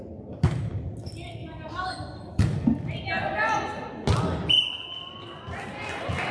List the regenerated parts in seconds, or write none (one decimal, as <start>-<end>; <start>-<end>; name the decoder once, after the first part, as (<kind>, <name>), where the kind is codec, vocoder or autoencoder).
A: none